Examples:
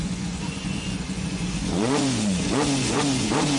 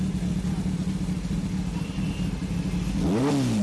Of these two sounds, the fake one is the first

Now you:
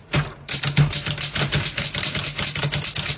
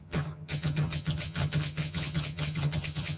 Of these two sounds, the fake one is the second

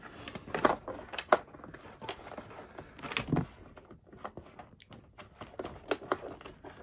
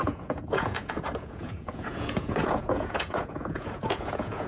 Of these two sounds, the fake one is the second